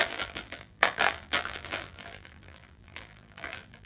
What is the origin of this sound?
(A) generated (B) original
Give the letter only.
A